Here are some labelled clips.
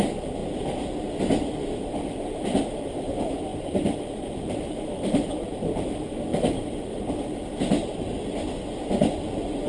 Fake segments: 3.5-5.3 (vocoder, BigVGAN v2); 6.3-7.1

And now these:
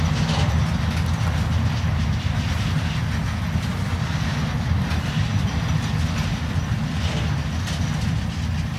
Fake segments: none

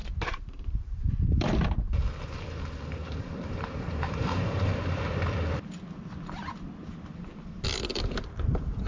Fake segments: 0.0-1.7 (vocoder, BigVGAN v2); 3.0-5.0

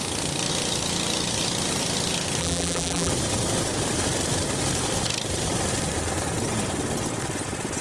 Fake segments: 2.4-3.1 (vocoder, BigVGAN v2)

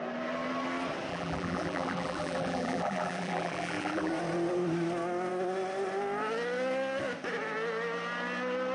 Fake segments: 1.1-4.1 (vocoder, BigVGAN v2)

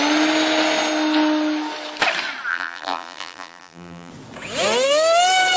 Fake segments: 2.5-4.1 (vocoder, BigVGAN v2)

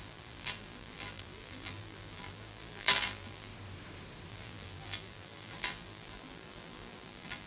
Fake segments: 0.0-3.5 (vocoder, BigVGAN v2); 4.3-7.5

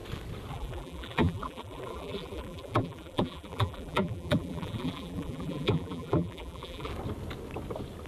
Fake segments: 0.5-6.9 (vocoder, BigVGAN v2)